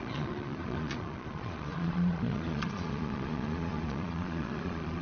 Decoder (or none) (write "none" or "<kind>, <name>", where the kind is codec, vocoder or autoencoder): vocoder, Vocos